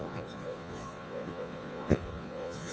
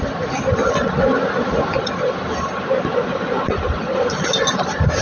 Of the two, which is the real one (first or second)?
second